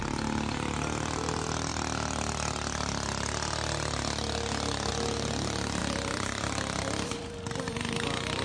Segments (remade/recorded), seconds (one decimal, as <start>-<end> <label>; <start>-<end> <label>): 0.0-1.7 recorded; 1.7-4.9 remade; 4.9-5.8 recorded; 5.8-7.7 remade; 7.7-8.4 recorded

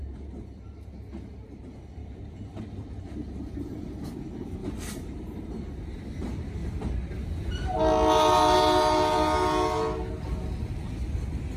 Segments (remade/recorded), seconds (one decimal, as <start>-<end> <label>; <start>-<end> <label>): 0.0-0.9 remade; 0.9-2.0 recorded; 2.0-3.9 remade; 3.9-4.6 recorded; 4.6-6.0 remade; 6.0-11.6 recorded

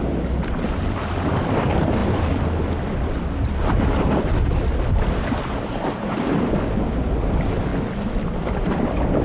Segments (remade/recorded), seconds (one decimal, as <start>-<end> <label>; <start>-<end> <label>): 0.0-7.7 remade; 7.7-8.7 recorded; 8.7-9.2 remade

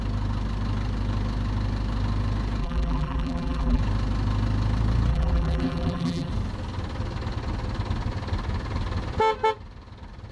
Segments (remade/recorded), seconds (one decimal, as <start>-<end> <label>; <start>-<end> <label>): 0.0-2.6 recorded; 2.6-3.8 remade; 3.8-5.1 recorded; 5.1-6.3 remade; 6.3-10.3 recorded

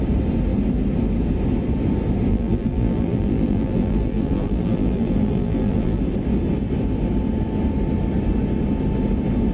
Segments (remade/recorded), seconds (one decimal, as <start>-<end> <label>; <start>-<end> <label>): 0.0-2.3 recorded; 2.3-6.0 remade; 6.0-9.5 recorded

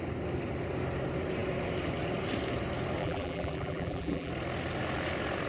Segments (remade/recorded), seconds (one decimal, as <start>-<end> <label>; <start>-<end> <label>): 0.0-3.0 recorded; 3.0-4.3 remade; 4.3-5.5 recorded